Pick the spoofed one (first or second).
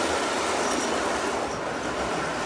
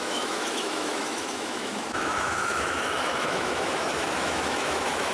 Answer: second